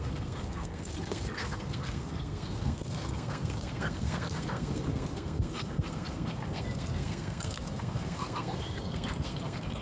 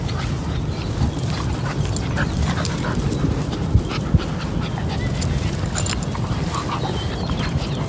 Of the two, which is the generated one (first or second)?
first